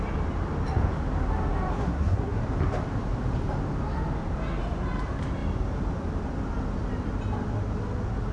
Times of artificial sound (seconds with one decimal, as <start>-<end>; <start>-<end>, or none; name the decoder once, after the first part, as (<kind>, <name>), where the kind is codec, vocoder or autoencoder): 1.7-2.4 (codec, SNAC)